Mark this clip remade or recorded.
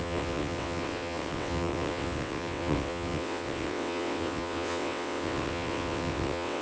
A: remade